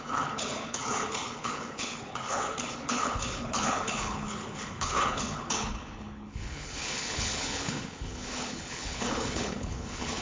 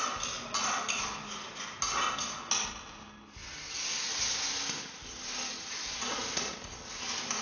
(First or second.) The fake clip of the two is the first